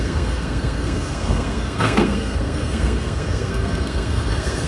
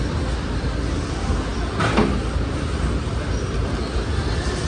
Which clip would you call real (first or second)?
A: second